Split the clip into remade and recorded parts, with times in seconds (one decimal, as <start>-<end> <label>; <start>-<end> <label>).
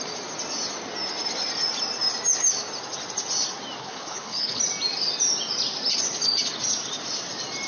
0.0-3.8 recorded; 3.8-4.6 remade; 4.6-7.7 recorded